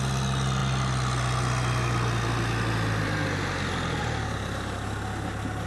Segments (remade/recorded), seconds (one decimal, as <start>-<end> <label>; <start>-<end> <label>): 0.0-5.7 recorded